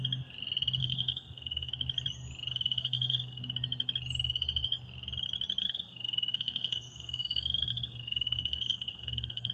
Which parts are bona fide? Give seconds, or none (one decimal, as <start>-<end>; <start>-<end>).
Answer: 0.0-0.8; 1.7-2.5; 3.4-5.6